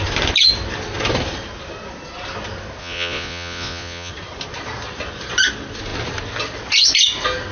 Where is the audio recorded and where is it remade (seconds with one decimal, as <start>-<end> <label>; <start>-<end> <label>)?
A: 0.0-2.8 recorded; 2.8-4.1 remade; 4.1-7.5 recorded

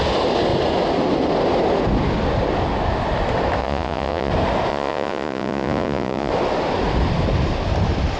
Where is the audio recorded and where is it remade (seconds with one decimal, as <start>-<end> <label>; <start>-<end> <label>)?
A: 0.0-3.6 recorded; 3.6-4.3 remade; 4.3-4.7 recorded; 4.7-6.3 remade; 6.3-8.2 recorded

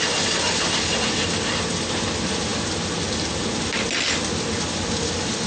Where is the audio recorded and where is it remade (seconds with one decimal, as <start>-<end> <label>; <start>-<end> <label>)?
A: 0.0-5.5 recorded

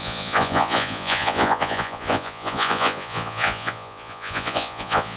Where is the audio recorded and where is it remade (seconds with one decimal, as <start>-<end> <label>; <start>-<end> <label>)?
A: 0.0-5.2 remade